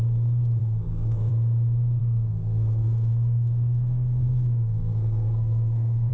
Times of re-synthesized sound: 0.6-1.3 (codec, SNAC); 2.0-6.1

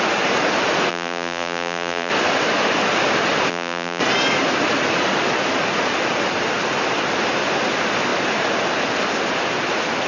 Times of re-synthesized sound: 0.9-2.1 (vocoder, BigVGAN v2); 3.5-4.0

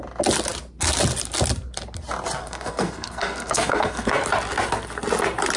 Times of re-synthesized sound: 2.4-4.2 (codec, SNAC)

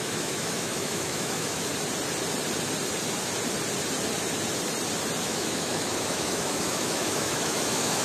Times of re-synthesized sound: 0.0-1.7 (autoencoder, DAC-VAE); 5.2-8.0

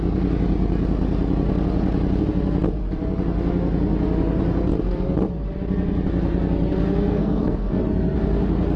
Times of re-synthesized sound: 7.1-7.8 (codec, SNAC)